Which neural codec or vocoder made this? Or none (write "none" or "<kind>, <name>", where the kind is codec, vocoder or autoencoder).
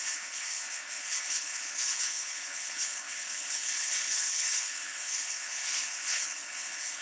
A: codec, HILCodec